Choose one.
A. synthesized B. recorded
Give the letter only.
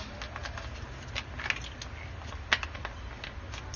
B